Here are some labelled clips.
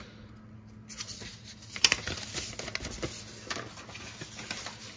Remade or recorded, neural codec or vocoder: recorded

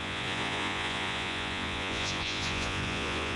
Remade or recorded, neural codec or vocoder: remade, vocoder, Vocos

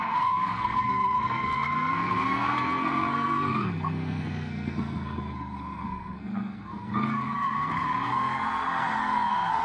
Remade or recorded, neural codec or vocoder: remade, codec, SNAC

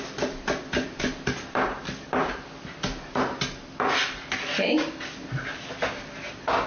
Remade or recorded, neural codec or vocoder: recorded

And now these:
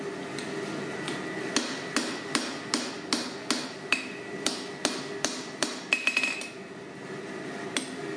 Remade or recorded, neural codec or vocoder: recorded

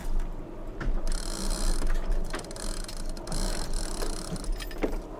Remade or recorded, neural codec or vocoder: recorded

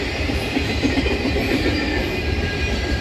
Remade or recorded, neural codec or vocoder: recorded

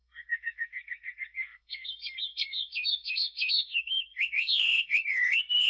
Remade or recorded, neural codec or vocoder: remade, codec, SNAC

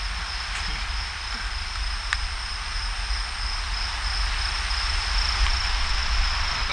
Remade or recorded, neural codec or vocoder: recorded